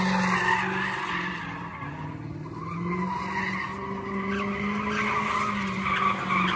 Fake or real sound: real